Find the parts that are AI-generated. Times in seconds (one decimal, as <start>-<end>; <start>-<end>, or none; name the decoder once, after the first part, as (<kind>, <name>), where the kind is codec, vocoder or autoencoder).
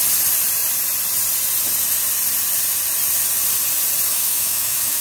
4.1-5.0 (autoencoder, DAC-VAE)